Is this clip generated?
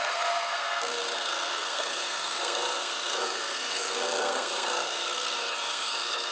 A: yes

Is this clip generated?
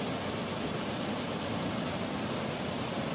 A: no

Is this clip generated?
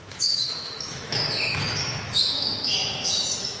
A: yes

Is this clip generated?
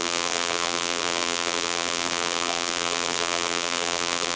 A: yes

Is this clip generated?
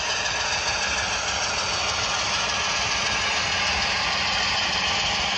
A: no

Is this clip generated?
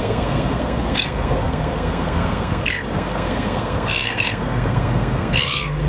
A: yes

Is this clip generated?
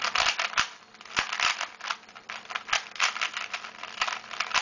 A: no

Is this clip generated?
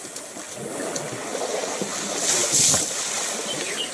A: no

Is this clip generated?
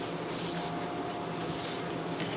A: no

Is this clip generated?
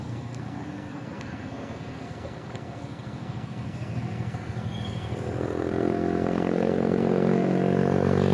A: yes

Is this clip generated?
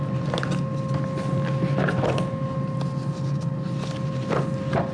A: no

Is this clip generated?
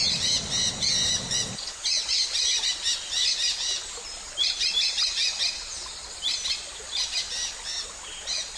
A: no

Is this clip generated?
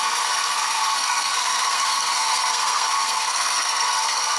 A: yes